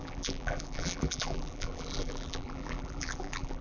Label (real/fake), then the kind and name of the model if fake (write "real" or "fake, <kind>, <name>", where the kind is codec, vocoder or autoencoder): fake, vocoder, BigVGAN v2